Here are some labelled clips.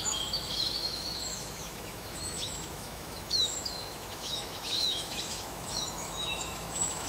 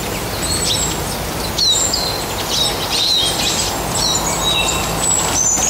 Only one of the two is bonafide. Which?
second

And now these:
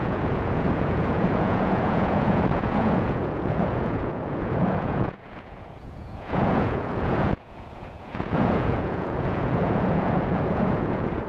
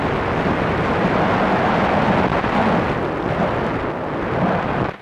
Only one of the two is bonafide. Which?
second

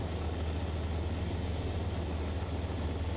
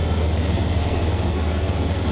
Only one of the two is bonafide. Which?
first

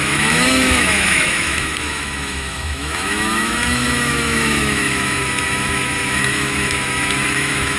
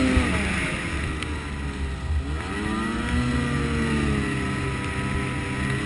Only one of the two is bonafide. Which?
second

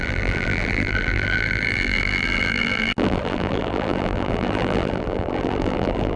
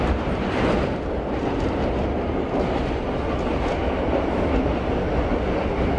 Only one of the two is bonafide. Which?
second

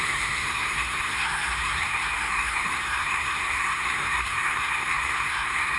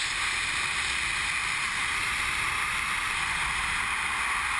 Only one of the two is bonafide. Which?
second